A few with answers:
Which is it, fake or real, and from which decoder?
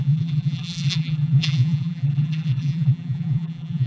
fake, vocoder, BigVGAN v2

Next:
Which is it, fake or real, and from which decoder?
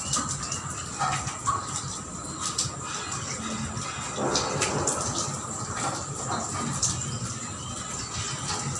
real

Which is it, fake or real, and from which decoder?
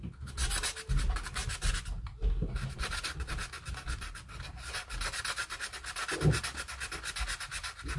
real